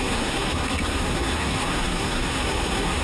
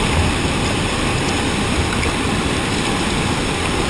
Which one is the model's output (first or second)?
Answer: first